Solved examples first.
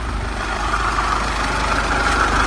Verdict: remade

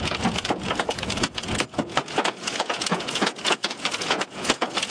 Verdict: remade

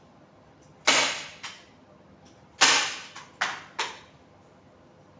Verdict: recorded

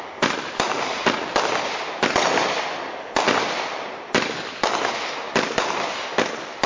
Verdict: recorded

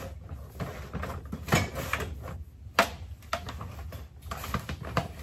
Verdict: recorded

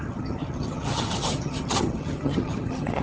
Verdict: remade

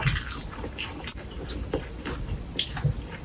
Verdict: recorded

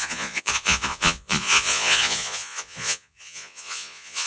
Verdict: remade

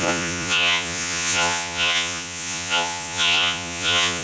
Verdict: remade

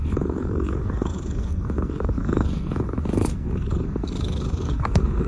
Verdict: remade